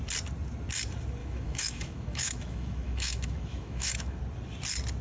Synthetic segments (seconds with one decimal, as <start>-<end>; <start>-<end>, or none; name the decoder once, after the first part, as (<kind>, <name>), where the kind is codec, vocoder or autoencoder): 1.2-4.2 (autoencoder, DAC-VAE)